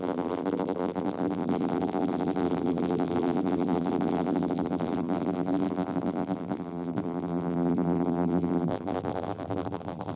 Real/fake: fake